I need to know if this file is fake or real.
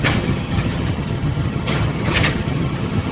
fake